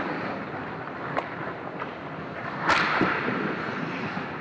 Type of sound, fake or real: real